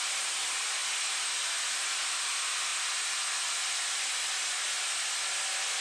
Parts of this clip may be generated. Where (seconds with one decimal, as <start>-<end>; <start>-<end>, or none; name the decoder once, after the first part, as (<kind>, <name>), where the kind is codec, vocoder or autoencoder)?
none